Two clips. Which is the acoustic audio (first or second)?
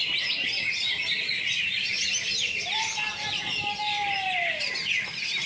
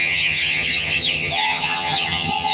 first